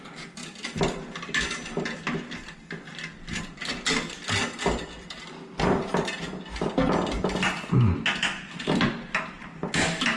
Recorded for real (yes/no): yes